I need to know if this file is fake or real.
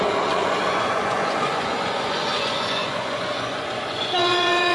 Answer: fake